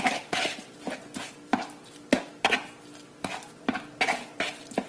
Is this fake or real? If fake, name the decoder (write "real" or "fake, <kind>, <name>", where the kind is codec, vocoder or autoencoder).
real